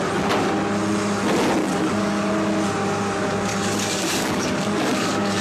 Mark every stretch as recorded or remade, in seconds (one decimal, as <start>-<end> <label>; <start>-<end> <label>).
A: 0.0-1.6 recorded; 1.6-2.3 remade; 2.3-3.5 recorded; 3.5-5.4 remade